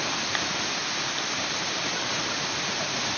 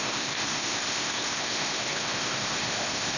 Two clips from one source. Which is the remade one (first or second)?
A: second